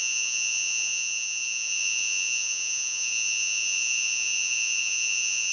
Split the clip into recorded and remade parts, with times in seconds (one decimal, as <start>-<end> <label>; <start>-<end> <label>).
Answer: 0.0-5.5 remade